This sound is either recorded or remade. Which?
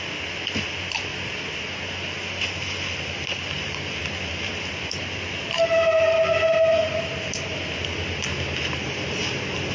recorded